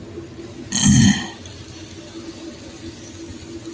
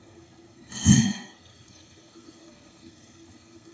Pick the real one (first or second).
first